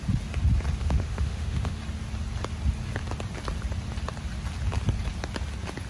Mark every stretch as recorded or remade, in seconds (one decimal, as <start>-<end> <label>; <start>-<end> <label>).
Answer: 0.0-0.8 recorded; 0.8-1.8 remade; 1.8-5.9 recorded